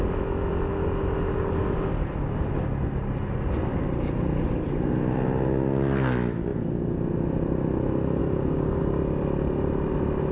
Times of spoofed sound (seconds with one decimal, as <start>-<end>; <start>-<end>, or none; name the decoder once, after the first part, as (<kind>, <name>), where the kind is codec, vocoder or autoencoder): 8.2-8.8 (codec, DAC)